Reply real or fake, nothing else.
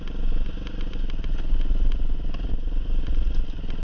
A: real